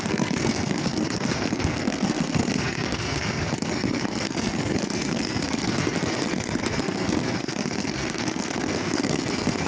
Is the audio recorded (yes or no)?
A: no